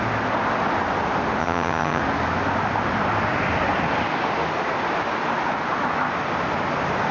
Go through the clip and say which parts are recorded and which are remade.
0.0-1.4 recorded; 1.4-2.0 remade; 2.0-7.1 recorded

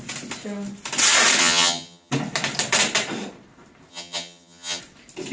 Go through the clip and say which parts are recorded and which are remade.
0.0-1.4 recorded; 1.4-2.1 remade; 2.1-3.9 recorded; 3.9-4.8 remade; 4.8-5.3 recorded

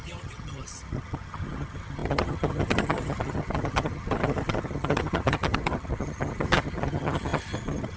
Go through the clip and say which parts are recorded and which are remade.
0.0-8.0 remade